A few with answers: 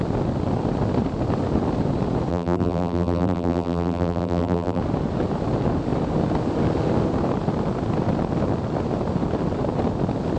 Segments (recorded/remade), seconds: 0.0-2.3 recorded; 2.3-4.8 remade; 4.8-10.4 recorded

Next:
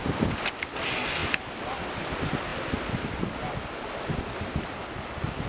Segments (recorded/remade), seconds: 0.0-5.5 recorded

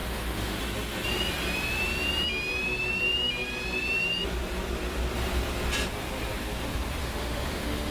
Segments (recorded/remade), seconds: 0.0-0.6 remade; 0.6-7.0 recorded; 7.0-7.9 remade

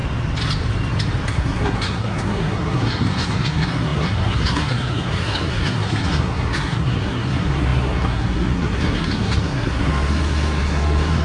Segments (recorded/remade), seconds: 0.0-1.3 recorded; 1.3-11.2 remade

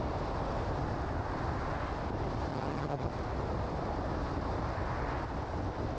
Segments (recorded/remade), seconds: 0.0-2.5 recorded; 2.5-3.1 remade; 3.1-6.0 recorded

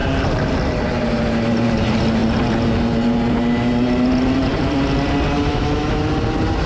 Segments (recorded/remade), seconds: 0.0-5.5 recorded; 5.5-6.0 remade; 6.0-6.7 recorded